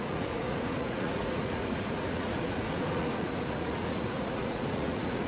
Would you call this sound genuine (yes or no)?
no